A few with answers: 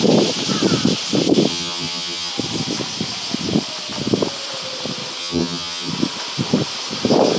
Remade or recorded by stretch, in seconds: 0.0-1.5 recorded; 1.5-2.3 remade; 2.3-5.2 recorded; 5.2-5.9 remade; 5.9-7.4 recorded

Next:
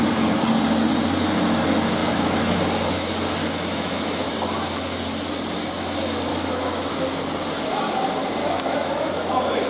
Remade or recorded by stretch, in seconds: 0.0-2.0 recorded; 2.0-2.6 remade; 2.6-3.4 recorded; 3.4-4.3 remade; 4.3-6.3 recorded; 6.3-6.9 remade; 6.9-8.4 recorded; 8.4-9.7 remade

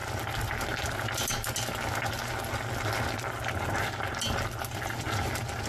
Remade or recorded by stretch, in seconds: 0.0-5.7 recorded